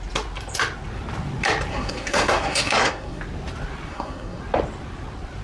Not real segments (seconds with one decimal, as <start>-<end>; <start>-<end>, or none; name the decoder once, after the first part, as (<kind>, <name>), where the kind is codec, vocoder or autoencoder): 1.7-3.2 (codec, SNAC); 3.9-4.4